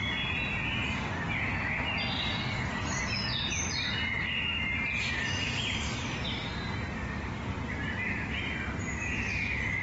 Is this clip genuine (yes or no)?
yes